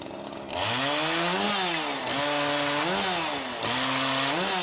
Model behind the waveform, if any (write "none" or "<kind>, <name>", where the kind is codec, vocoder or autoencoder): none